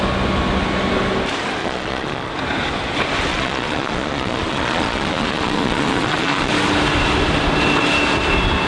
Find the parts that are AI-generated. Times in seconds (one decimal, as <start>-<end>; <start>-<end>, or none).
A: 1.6-2.3; 3.3-6.5